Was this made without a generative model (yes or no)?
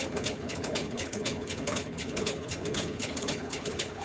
no